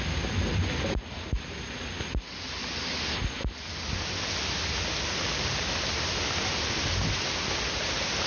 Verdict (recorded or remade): recorded